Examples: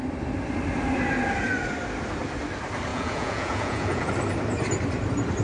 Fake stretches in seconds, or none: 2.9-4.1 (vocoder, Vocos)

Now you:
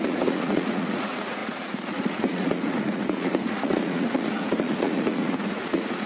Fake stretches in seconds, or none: 0.0-6.1 (vocoder, Vocos)

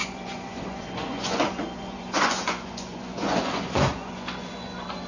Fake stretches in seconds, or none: 0.0-5.1 (vocoder, Vocos)

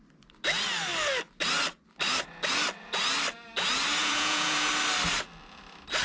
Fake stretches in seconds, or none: 4.0-4.7 (vocoder, Vocos)

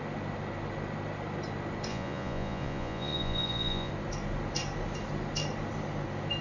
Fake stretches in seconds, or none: 1.9-3.9 (vocoder, Vocos)

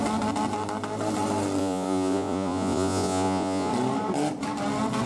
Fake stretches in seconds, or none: 1.6-3.7 (vocoder, Vocos)

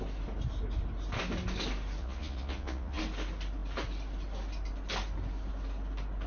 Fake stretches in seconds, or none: 2.0-3.0 (vocoder, Vocos)